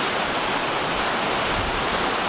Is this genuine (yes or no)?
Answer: no